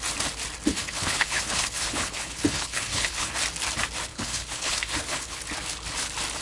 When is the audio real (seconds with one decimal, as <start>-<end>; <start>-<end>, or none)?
0.0-0.7; 3.3-4.1; 5.4-6.4